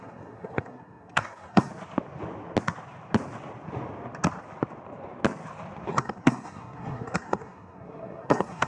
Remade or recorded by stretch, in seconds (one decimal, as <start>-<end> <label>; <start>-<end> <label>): 0.0-1.7 remade; 1.7-5.9 recorded; 5.9-8.7 remade